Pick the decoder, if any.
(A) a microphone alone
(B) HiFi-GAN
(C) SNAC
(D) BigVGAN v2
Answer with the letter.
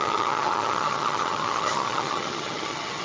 B